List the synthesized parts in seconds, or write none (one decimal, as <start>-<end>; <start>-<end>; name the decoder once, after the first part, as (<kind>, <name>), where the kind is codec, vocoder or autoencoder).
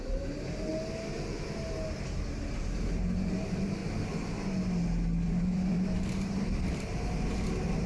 0.0-0.7 (vocoder, BigVGAN v2); 2.5-3.8; 5.3-7.9